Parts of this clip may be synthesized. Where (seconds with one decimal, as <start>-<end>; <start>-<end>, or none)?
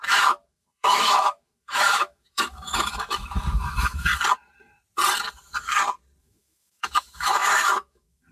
0.0-4.1; 6.2-8.3